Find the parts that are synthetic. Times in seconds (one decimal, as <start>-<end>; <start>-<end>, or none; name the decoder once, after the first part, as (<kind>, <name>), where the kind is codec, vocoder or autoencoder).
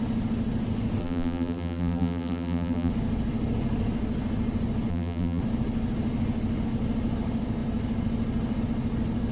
1.0-2.9 (vocoder, BigVGAN v2); 4.9-5.4